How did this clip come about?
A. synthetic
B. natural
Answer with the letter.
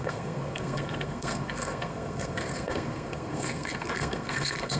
A